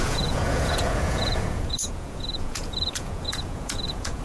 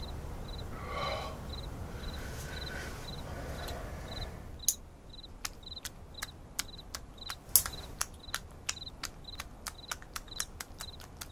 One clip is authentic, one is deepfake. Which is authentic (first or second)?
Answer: second